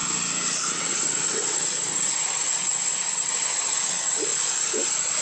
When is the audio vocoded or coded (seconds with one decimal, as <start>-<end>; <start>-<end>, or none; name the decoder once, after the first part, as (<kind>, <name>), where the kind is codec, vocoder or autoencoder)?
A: 0.7-4.3 (vocoder, WaveNeXt)